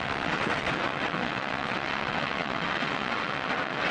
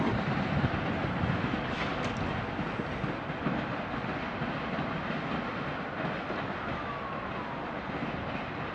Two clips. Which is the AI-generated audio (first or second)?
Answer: first